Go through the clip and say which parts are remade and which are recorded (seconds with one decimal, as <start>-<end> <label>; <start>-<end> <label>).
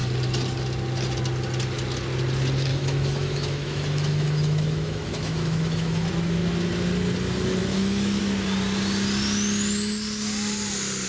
0.0-2.7 recorded; 2.7-6.1 remade; 6.1-7.6 recorded; 7.6-8.2 remade; 8.2-11.1 recorded